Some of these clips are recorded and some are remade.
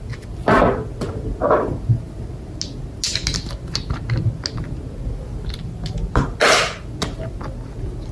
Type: recorded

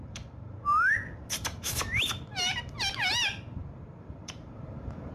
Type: remade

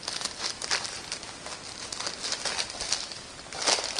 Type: recorded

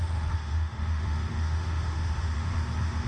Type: remade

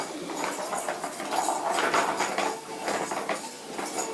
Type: recorded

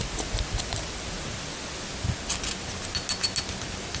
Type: recorded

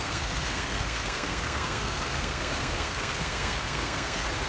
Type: remade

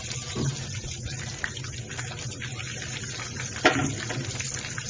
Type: recorded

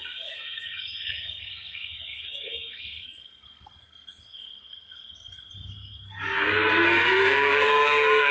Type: remade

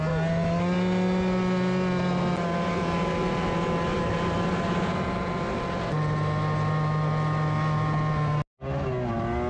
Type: recorded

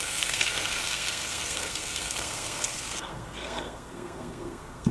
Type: remade